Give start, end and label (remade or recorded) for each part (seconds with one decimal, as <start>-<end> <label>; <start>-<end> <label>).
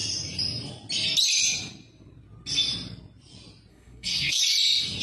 0.0-3.7 recorded; 3.7-4.4 remade; 4.4-5.0 recorded